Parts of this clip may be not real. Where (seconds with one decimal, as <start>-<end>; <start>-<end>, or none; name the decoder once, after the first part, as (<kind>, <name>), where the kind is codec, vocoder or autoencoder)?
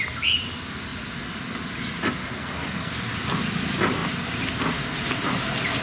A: 2.2-2.9 (codec, SNAC)